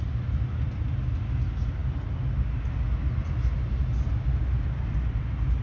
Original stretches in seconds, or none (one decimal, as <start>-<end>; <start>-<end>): 0.0-5.6